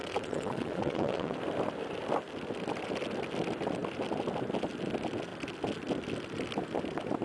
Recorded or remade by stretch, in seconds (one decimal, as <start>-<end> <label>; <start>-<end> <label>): 0.0-1.4 remade; 1.4-7.2 recorded